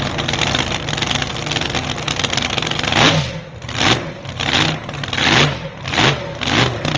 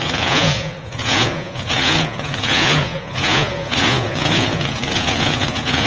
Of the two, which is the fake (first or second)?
second